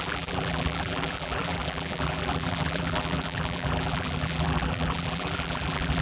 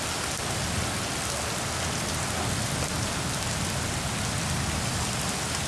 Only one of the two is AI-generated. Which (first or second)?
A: first